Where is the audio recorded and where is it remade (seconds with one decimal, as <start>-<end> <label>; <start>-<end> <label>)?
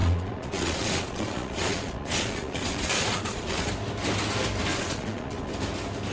0.0-3.7 remade; 3.7-4.7 recorded; 4.7-5.5 remade; 5.5-6.1 recorded